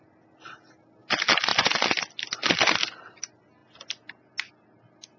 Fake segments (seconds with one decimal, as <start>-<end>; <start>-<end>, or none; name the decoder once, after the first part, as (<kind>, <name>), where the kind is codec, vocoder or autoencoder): none